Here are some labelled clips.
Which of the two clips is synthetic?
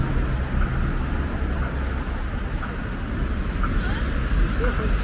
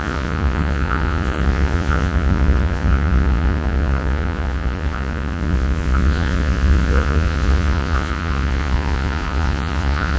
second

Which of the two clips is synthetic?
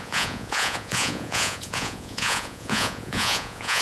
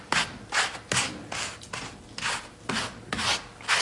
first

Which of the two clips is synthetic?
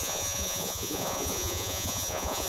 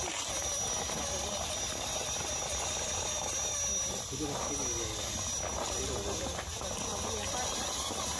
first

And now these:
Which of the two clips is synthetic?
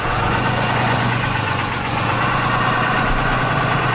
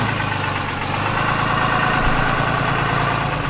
first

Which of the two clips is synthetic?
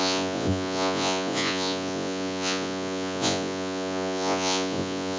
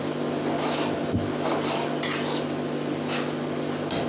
first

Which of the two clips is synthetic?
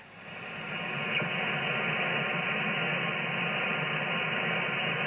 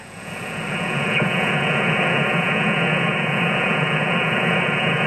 second